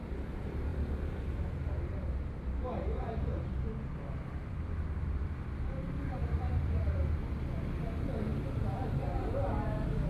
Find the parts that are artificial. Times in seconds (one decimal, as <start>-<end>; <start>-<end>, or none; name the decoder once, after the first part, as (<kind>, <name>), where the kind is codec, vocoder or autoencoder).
0.7-5.3 (vocoder, BigVGAN v2); 6.2-7.1